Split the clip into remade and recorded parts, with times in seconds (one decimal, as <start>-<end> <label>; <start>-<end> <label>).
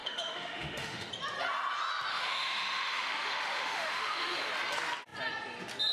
0.0-1.1 remade; 1.1-2.1 recorded; 2.1-4.5 remade; 4.5-5.9 recorded